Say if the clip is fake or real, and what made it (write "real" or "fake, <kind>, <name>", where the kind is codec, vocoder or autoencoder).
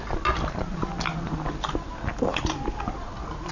real